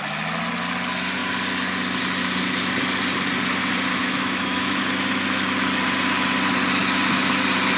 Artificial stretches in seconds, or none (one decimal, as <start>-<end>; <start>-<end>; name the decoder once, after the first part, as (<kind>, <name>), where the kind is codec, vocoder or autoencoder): 3.9-4.8 (autoencoder, DAC-VAE)